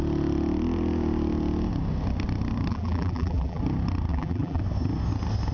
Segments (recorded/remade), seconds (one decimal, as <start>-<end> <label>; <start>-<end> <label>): 0.0-2.7 recorded; 2.7-3.6 remade; 3.6-4.1 recorded; 4.1-4.6 remade; 4.6-5.5 recorded